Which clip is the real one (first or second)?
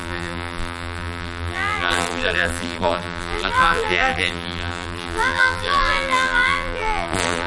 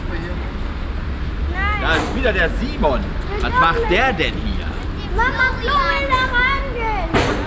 second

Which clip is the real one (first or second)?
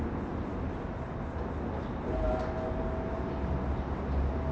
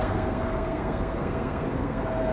first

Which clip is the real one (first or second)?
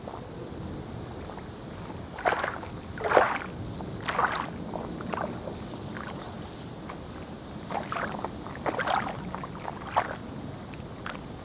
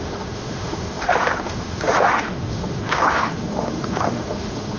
first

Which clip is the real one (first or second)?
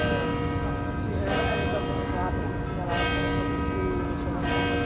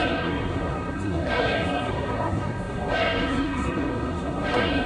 first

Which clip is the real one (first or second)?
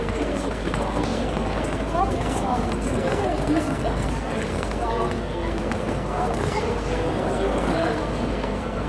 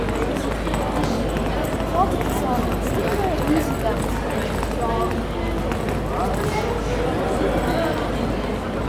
second